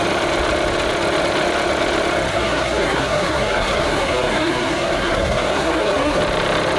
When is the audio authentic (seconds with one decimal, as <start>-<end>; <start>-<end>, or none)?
0.0-2.3; 6.2-6.8